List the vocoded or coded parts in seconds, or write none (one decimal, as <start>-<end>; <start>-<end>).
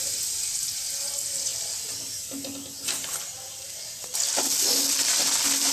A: 0.0-0.8